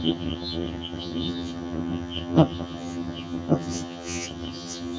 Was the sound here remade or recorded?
remade